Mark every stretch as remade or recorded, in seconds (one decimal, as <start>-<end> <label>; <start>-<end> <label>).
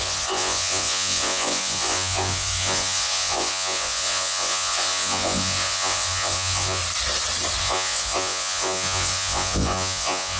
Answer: 0.0-6.8 remade; 6.8-7.6 recorded; 7.6-10.4 remade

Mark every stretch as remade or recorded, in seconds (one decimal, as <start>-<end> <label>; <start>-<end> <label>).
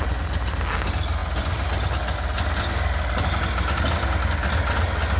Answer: 0.0-5.2 recorded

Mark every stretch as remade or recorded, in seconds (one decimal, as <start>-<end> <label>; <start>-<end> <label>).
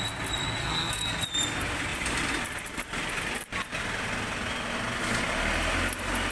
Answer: 0.0-0.6 recorded; 0.6-1.2 remade; 1.2-6.3 recorded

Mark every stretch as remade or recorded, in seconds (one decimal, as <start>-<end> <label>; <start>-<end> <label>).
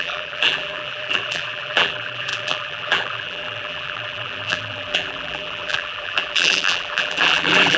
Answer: 0.0-7.8 remade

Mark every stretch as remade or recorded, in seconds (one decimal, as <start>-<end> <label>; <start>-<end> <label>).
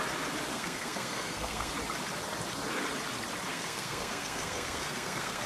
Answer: 0.0-0.5 recorded; 0.5-1.7 remade; 1.7-3.5 recorded; 3.5-5.5 remade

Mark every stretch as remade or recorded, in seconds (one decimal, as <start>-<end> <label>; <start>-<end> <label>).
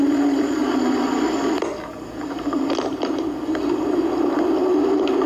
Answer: 0.0-0.6 remade; 0.6-1.3 recorded; 1.3-5.3 remade